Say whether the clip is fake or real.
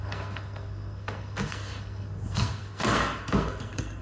fake